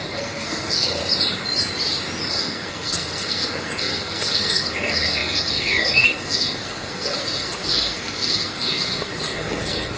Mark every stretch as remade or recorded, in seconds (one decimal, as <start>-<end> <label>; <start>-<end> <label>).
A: 0.0-1.0 remade; 1.0-2.3 recorded; 2.3-10.0 remade